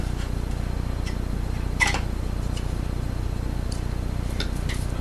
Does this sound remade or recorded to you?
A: recorded